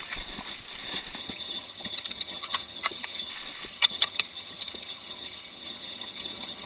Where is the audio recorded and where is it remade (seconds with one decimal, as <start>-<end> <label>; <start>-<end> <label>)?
0.0-1.2 recorded; 1.2-3.3 remade; 3.3-3.7 recorded; 3.7-6.7 remade